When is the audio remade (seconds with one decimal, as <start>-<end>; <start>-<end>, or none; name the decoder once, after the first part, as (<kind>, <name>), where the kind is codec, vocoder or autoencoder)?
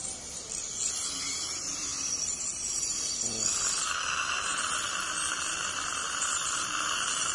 none